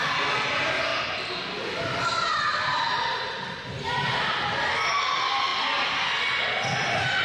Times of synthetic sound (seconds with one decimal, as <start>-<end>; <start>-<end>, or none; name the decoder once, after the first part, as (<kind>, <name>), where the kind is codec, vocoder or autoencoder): none